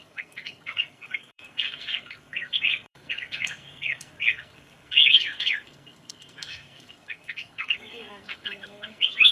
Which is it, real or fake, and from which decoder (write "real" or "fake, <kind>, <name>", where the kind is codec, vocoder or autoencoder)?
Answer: fake, codec, SNAC